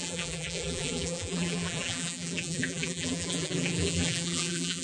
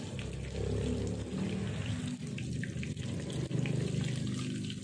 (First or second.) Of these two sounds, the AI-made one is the first